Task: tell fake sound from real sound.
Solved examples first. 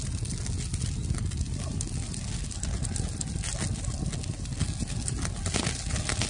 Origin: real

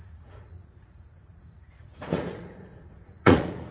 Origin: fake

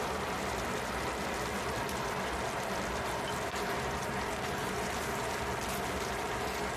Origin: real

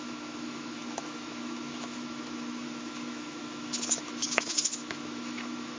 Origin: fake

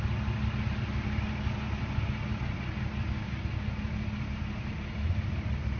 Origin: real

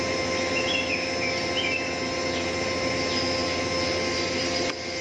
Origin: real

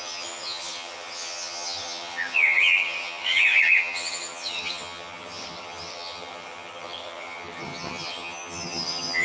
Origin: fake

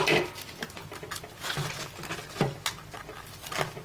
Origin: real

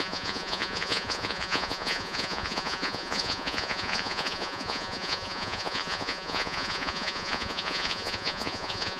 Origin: fake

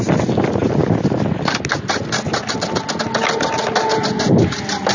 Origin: real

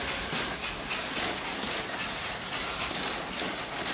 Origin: real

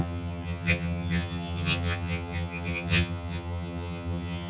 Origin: fake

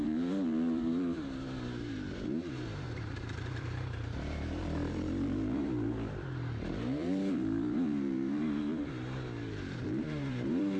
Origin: fake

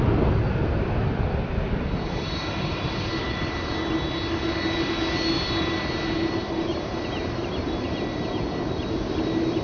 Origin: real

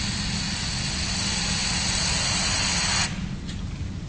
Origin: real